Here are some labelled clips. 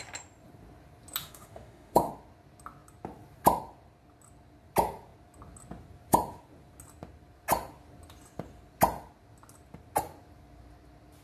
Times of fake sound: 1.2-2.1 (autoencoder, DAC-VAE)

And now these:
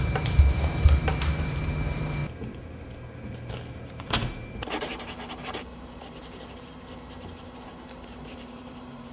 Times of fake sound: 0.0-2.2 (vocoder, BigVGAN v2); 3.7-9.1

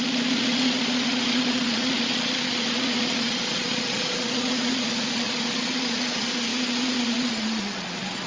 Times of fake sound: 0.0-8.3 (vocoder, Vocos)

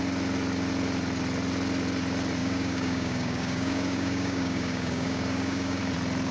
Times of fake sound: 2.4-5.8 (codec, DAC)

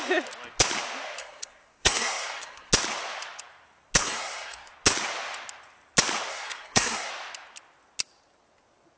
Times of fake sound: 1.2-2.7 (codec, SNAC); 4.0-4.7; 6.3-7.1

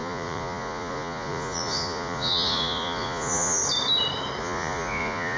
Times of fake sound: 0.0-3.6 (vocoder, Vocos); 4.4-5.4